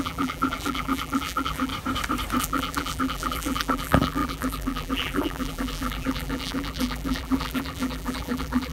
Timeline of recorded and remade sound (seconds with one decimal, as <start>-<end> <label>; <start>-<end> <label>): 0.0-1.7 remade; 1.7-2.4 recorded; 2.4-8.7 remade